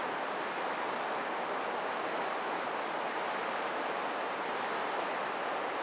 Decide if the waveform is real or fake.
real